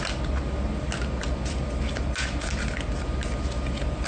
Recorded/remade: recorded